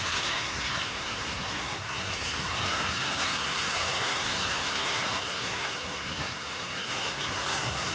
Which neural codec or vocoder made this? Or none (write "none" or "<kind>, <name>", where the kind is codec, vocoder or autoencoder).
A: codec, SNAC